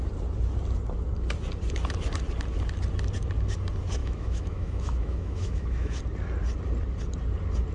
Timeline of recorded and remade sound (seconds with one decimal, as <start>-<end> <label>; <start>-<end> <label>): 0.0-4.0 recorded; 4.0-6.0 remade; 6.0-7.7 recorded